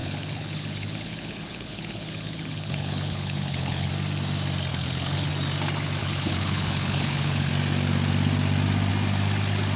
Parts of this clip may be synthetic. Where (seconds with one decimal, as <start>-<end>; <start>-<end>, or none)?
0.0-3.9; 4.7-5.3; 6.0-7.5